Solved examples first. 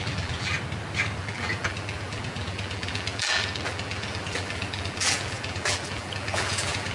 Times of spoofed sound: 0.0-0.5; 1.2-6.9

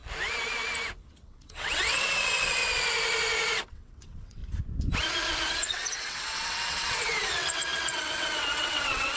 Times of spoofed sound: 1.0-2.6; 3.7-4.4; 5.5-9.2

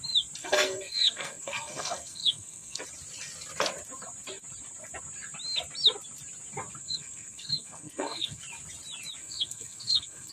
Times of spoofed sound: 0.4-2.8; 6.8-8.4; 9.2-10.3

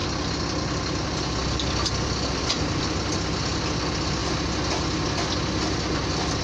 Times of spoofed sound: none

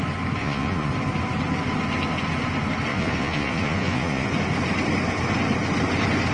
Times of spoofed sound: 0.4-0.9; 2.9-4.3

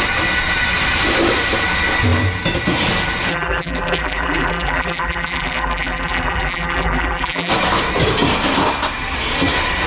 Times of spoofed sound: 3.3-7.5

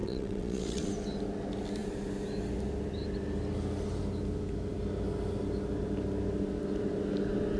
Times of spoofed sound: 0.0-0.9